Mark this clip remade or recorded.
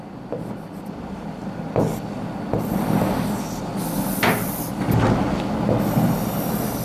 recorded